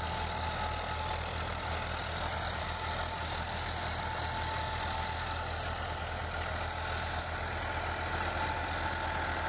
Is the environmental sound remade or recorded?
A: recorded